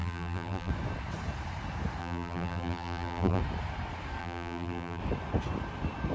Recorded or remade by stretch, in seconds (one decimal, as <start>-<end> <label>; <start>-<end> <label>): 0.0-0.7 remade; 0.7-2.0 recorded; 2.0-3.4 remade; 3.4-4.2 recorded; 4.2-5.0 remade; 5.0-6.1 recorded